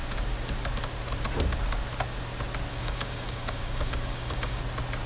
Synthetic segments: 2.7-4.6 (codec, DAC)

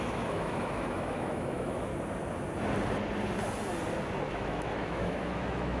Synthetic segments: 0.0-1.9 (autoencoder, DAC-VAE); 4.3-5.8

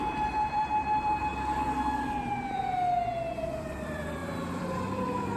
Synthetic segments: 0.0-1.3 (vocoder, BigVGAN v2); 3.5-5.4

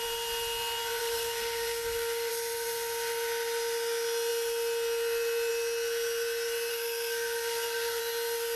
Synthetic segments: 1.0-2.3 (codec, SNAC); 6.7-8.0

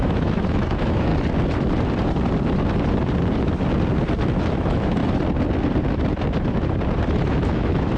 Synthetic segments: 0.0-1.1 (autoencoder, DAC-VAE); 4.4-5.0; 7.2-8.0

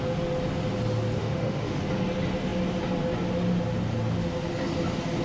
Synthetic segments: 1.2-1.8 (autoencoder, DAC-VAE)